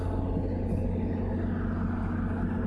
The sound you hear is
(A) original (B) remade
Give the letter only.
A